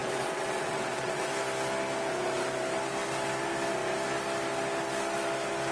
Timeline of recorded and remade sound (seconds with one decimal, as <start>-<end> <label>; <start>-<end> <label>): 0.0-1.3 remade; 1.3-5.7 recorded